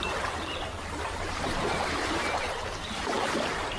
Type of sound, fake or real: fake